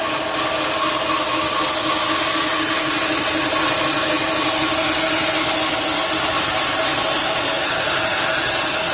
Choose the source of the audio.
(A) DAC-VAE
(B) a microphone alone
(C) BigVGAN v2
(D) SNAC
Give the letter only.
B